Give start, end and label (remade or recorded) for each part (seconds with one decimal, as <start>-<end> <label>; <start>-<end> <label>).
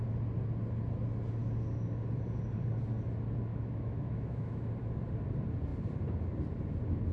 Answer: 0.0-3.5 recorded; 3.5-4.7 remade; 4.7-7.1 recorded